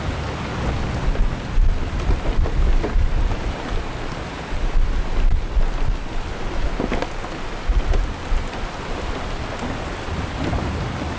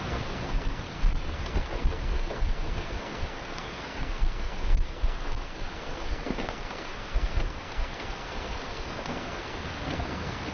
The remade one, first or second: second